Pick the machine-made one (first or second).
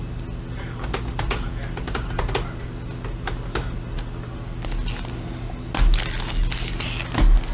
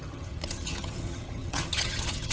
second